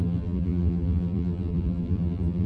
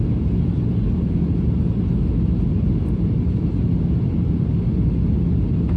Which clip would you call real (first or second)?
second